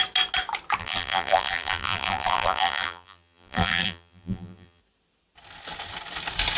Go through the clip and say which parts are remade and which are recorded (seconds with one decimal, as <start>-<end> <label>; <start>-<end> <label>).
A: 0.0-0.8 recorded; 0.8-4.8 remade; 4.8-6.6 recorded